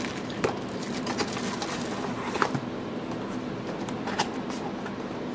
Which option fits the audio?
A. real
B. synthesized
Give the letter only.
A